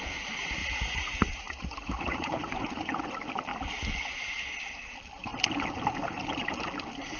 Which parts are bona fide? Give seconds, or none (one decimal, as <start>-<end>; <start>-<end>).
0.0-0.6; 3.0-7.2

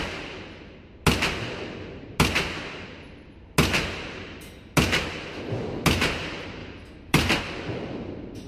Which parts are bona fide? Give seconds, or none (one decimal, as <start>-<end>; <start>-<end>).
0.0-6.6; 7.4-8.5

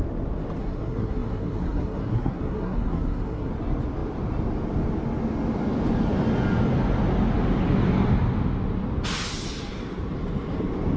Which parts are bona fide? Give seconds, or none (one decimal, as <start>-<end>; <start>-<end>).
0.0-0.6; 3.5-11.0

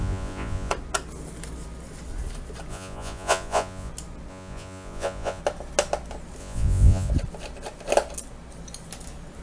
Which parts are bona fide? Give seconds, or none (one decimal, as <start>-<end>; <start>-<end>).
0.7-2.7; 3.9-4.3; 5.4-6.4; 7.1-9.4

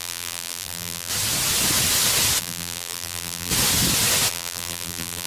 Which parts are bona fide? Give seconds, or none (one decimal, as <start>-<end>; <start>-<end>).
1.1-2.4; 3.5-4.3

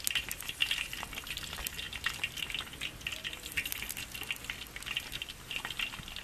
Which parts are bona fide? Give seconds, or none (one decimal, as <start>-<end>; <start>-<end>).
0.0-6.2

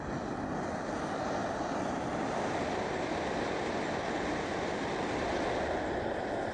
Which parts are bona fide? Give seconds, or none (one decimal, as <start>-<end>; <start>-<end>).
none

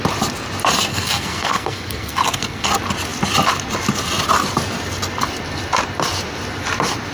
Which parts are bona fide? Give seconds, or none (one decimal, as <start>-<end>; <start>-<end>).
0.0-0.9; 2.7-7.1